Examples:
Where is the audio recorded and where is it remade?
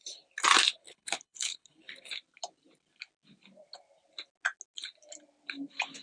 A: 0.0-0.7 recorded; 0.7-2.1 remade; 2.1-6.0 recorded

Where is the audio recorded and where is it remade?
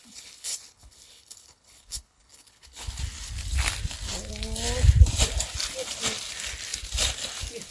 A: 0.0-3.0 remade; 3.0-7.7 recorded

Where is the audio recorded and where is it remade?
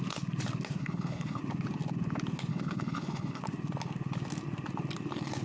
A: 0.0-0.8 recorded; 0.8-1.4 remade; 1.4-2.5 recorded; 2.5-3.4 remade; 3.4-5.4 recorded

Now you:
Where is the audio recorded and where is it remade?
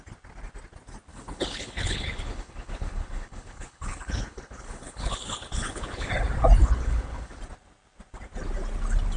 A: 0.0-1.1 recorded; 1.1-6.1 remade; 6.1-6.6 recorded; 6.6-7.4 remade; 7.4-9.2 recorded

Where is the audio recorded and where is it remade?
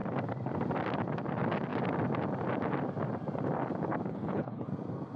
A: 0.0-4.1 recorded; 4.1-4.7 remade; 4.7-5.2 recorded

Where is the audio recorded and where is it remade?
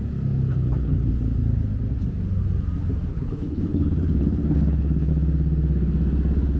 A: 0.0-0.5 recorded; 0.5-1.1 remade; 1.1-3.1 recorded; 3.1-5.1 remade; 5.1-6.6 recorded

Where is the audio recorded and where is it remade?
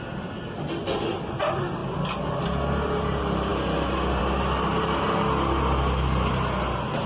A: 0.0-7.1 recorded